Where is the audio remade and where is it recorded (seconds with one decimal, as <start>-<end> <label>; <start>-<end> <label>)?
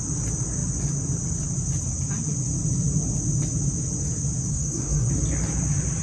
0.0-4.5 recorded; 4.5-5.1 remade; 5.1-6.0 recorded